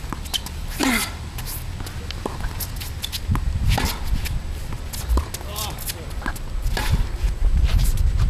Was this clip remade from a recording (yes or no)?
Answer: no